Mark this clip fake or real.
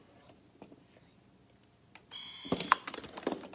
real